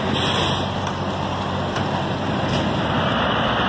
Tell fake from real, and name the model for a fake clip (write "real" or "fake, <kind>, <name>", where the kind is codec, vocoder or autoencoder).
real